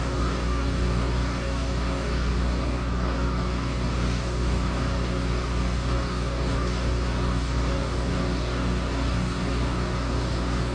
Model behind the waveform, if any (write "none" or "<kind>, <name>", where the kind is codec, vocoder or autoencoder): codec, DAC